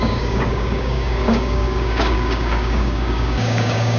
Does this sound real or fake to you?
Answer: fake